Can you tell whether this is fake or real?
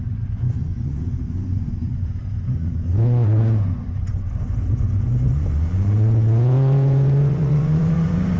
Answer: fake